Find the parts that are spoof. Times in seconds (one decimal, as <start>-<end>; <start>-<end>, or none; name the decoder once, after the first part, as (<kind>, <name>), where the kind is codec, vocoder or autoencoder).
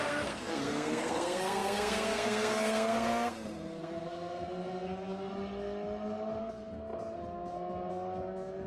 0.0-5.3 (codec, SNAC); 6.4-8.7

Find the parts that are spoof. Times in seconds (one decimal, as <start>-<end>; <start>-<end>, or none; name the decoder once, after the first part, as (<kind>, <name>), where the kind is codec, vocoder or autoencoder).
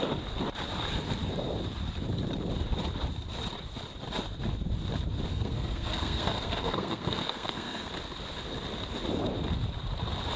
5.3-7.9 (codec, SNAC)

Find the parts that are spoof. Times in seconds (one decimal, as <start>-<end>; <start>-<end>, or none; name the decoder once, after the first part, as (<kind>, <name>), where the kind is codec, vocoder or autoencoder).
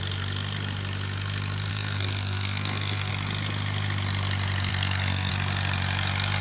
1.7-3.1 (codec, SNAC); 4.7-5.3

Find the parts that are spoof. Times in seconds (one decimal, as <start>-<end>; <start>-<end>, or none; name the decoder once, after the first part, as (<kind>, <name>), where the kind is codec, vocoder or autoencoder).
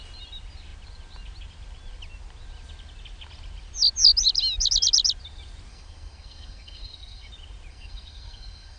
5.7-7.3 (codec, SNAC); 7.7-8.8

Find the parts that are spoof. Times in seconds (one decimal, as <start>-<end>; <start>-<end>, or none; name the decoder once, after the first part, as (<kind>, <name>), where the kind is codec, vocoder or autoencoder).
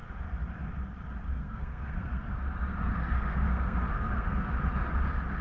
1.3-4.5 (codec, SNAC)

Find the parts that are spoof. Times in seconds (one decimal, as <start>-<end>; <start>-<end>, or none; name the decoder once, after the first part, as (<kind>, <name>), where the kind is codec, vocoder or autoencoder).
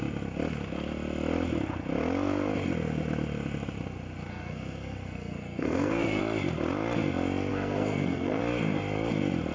4.3-6.2 (codec, SNAC); 7.5-8.4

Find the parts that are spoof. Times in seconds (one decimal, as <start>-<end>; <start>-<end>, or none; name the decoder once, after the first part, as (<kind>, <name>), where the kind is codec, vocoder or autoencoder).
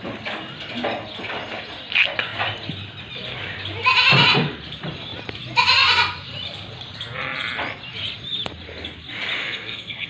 9.4-10.1 (codec, SNAC)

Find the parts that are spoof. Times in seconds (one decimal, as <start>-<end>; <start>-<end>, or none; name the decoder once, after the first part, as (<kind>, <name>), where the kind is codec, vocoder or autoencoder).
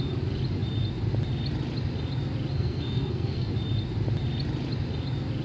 2.5-3.5 (codec, SNAC)